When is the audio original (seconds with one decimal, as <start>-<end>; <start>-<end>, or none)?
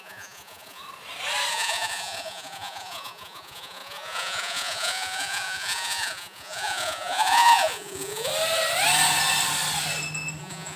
0.8-1.5; 8.3-10.4